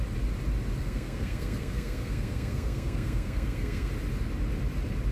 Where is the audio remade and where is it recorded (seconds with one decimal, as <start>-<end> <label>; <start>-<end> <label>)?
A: 0.0-0.8 recorded; 0.8-3.9 remade; 3.9-5.1 recorded